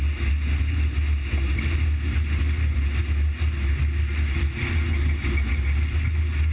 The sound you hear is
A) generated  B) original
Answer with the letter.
B